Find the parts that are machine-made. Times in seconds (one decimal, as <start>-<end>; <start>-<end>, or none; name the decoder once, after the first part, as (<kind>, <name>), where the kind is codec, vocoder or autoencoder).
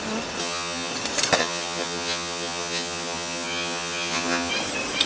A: 0.4-0.9 (vocoder, HiFi-GAN); 1.4-4.5